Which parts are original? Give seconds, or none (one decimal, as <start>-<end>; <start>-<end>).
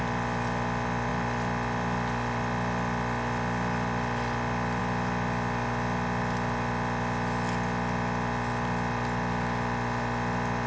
0.0-1.1; 4.8-10.7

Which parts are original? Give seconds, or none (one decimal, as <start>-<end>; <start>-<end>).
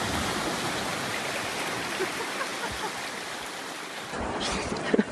0.0-0.9; 1.6-2.5; 4.2-5.1